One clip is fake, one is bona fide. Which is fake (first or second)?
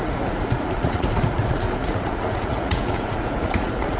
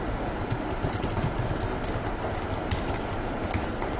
first